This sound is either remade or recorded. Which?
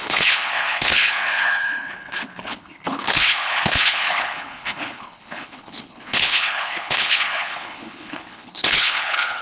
remade